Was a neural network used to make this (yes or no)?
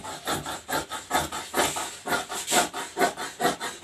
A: no